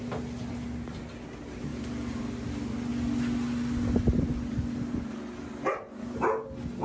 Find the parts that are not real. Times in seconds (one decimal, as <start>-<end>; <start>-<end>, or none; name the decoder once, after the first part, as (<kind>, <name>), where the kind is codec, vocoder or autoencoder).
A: none